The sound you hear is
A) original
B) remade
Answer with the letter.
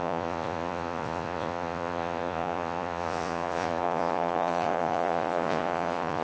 B